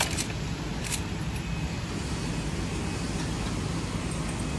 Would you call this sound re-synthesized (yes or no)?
no